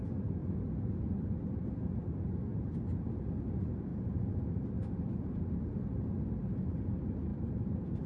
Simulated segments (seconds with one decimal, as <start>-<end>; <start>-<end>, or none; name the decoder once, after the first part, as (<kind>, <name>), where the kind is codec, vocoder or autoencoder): 2.5-3.5 (vocoder, BigVGAN v2); 3.9-5.6; 7.3-8.1